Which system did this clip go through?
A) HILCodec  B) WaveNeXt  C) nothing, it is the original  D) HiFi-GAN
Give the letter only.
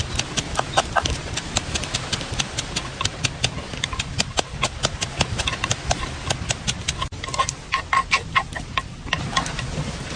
C